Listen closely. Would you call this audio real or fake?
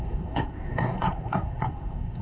fake